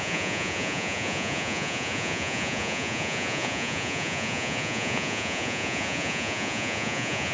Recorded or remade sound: remade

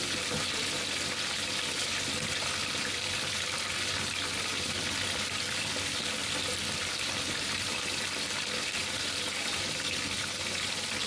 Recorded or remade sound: remade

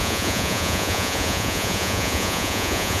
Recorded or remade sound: remade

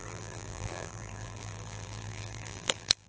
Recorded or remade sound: remade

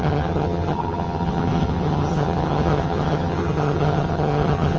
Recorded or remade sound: remade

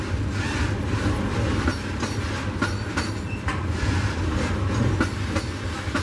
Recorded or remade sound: recorded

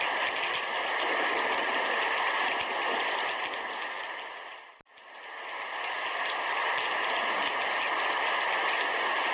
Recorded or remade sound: recorded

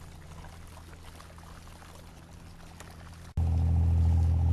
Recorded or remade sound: recorded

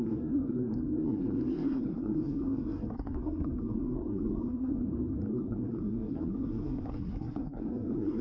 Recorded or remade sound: remade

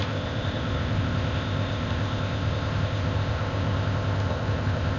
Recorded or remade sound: remade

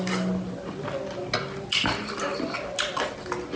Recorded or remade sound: recorded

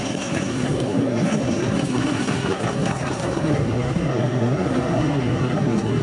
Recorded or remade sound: remade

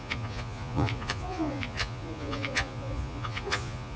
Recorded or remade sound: remade